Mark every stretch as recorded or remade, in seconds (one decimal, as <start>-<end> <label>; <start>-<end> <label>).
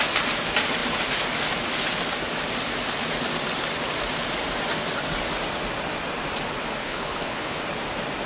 0.0-6.8 recorded; 6.8-7.6 remade; 7.6-8.3 recorded